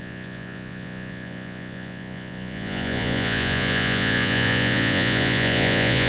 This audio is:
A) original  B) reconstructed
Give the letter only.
B